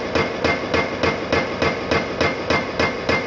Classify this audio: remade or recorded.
recorded